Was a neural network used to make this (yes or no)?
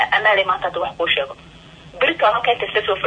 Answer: yes